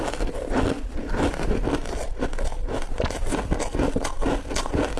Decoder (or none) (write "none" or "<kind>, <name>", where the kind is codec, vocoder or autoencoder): none